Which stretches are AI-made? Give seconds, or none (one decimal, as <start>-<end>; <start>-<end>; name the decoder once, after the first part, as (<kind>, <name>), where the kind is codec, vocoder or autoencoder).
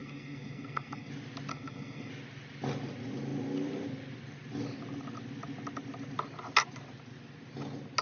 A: 0.0-1.1 (codec, SNAC); 1.5-2.1